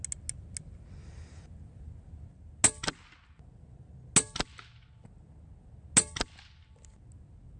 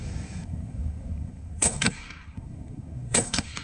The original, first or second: first